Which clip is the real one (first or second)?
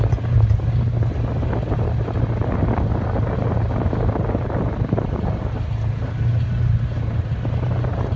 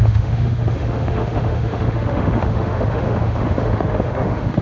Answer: first